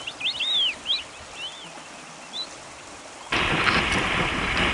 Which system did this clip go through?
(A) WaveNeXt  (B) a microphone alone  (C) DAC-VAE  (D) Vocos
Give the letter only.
B